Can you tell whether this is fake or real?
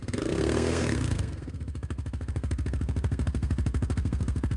fake